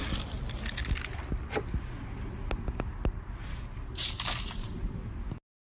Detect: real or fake real